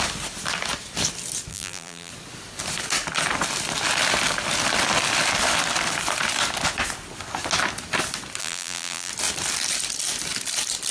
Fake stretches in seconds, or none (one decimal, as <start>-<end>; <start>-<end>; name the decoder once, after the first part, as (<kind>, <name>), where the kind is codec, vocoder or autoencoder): 1.5-2.1 (vocoder, BigVGAN v2); 8.4-9.1